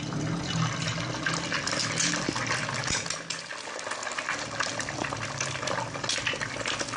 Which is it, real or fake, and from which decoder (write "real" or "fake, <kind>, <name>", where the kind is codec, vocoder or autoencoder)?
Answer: real